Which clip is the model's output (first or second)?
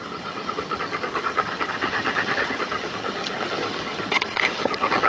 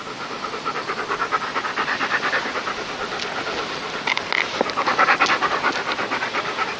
first